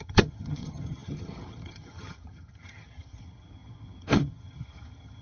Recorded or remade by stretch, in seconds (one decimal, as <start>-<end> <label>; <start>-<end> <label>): 0.0-5.2 remade